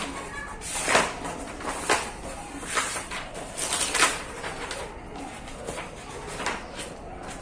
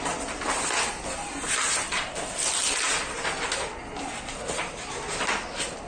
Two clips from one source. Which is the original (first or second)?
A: second